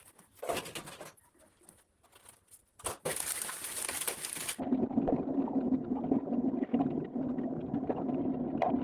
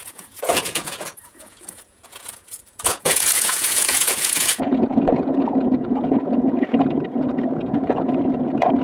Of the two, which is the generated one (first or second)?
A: second